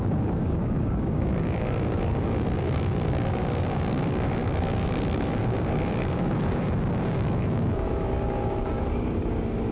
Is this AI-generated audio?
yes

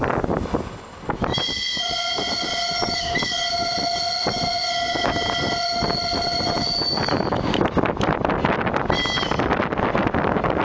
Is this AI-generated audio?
no